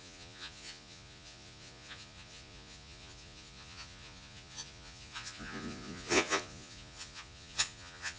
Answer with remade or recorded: remade